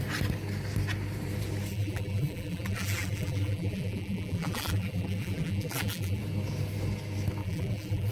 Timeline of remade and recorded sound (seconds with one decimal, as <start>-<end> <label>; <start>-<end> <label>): 0.0-1.7 recorded; 1.7-6.2 remade; 6.2-7.4 recorded; 7.4-8.1 remade